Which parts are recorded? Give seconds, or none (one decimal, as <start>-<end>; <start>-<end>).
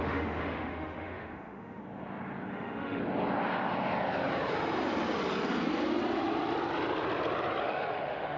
1.8-2.5; 3.0-7.6